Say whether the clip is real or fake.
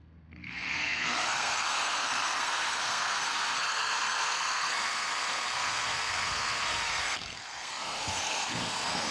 fake